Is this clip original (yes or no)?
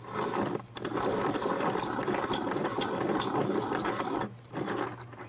yes